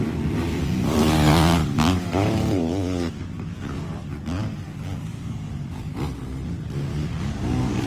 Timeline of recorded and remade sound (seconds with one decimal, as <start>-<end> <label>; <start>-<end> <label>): 0.0-1.6 recorded; 1.6-3.9 remade; 3.9-5.1 recorded; 5.1-5.9 remade; 5.9-6.9 recorded; 6.9-7.9 remade